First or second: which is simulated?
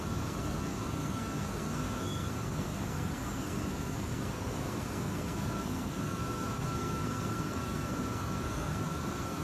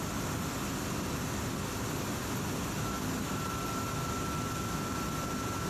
first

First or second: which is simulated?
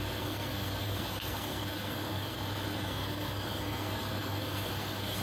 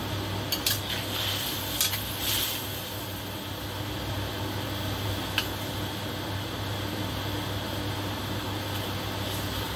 first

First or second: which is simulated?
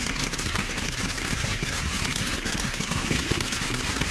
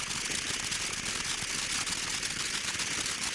first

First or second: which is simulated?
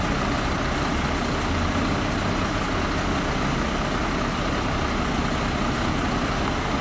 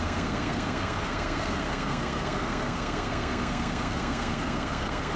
second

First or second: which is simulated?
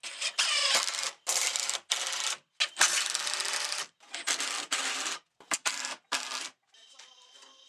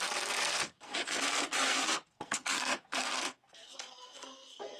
second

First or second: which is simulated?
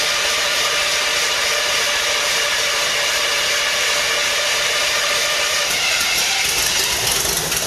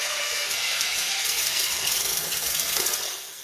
second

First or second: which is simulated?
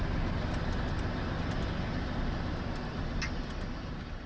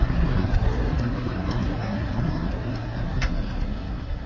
second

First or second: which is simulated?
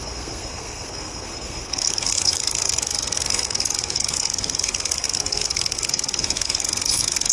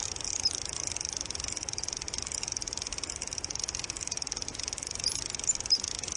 first